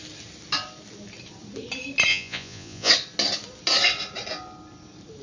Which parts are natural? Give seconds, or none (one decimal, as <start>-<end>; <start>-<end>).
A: 0.0-2.1; 2.9-5.2